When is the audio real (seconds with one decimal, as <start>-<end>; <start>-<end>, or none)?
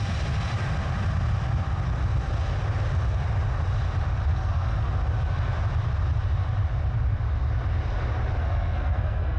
0.0-4.3; 4.9-8.4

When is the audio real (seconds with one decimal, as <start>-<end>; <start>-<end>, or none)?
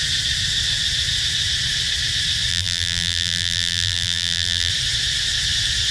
0.0-2.5; 4.7-5.9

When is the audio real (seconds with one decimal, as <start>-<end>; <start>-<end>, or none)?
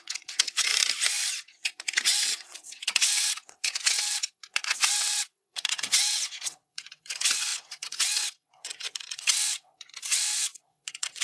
0.7-1.3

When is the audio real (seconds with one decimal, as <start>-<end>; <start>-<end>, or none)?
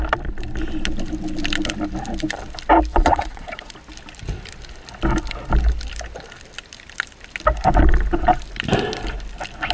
0.0-2.9; 3.7-9.7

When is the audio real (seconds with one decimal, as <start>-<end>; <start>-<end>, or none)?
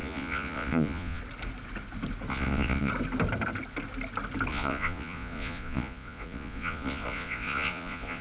1.2-2.3; 2.9-4.5